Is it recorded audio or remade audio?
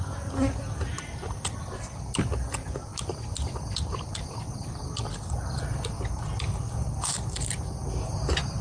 recorded